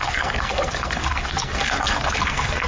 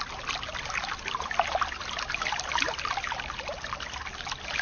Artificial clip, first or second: first